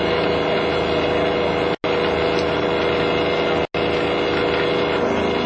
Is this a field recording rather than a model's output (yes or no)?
yes